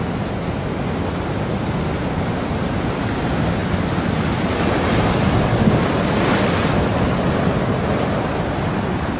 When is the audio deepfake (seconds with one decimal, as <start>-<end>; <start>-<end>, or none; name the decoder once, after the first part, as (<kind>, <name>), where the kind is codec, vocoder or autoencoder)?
none